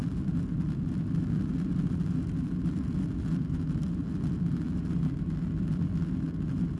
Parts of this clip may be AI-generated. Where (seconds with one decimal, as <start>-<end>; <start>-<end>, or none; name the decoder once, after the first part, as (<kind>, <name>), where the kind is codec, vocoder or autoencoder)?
none